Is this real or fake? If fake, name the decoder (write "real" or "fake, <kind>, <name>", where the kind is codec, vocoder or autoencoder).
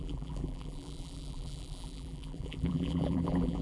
fake, vocoder, BigVGAN v2